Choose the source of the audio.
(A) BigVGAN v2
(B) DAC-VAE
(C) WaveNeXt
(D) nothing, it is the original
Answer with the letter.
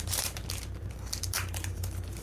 A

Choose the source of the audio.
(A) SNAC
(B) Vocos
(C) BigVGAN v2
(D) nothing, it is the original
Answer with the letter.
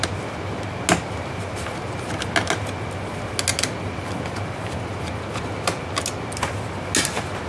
D